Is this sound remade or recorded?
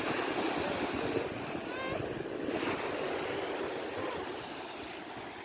recorded